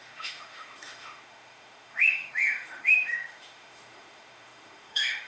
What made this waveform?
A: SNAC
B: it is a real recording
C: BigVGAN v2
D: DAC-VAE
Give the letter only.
D